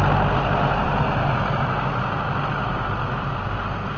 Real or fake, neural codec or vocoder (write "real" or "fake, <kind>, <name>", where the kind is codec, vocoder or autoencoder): real